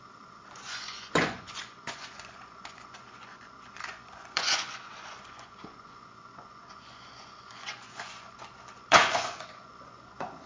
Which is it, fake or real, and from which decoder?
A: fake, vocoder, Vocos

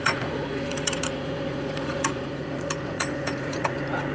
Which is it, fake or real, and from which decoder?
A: fake, vocoder, Vocos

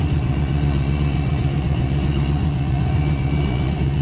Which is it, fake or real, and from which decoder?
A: fake, vocoder, Vocos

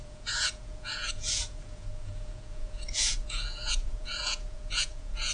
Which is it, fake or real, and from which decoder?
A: fake, vocoder, Vocos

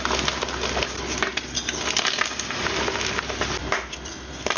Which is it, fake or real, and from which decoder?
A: real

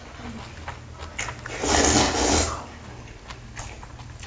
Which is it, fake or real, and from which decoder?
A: real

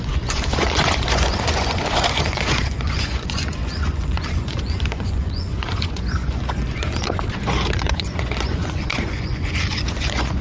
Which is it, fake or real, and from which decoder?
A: fake, vocoder, Vocos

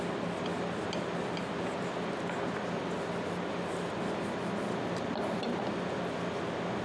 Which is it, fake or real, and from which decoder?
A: real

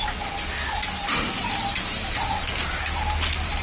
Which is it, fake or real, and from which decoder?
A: real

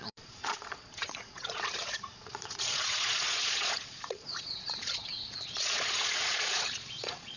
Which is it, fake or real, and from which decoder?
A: fake, vocoder, Vocos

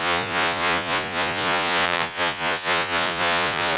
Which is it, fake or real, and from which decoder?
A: fake, vocoder, Vocos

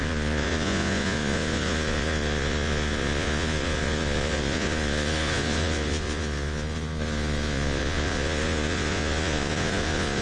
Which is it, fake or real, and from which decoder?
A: fake, vocoder, Vocos